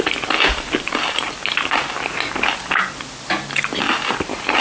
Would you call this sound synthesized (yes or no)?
no